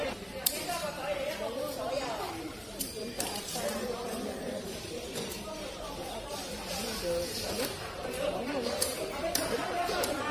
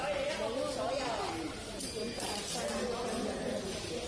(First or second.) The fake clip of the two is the first